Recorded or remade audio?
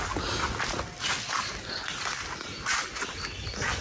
recorded